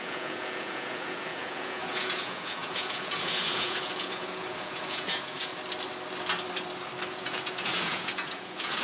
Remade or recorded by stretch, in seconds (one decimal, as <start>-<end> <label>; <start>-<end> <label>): 0.0-5.5 remade; 5.5-7.1 recorded; 7.1-8.8 remade